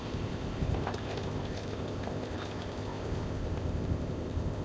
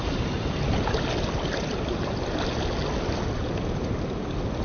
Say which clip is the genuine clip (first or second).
second